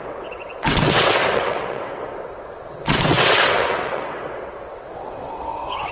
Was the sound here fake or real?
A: fake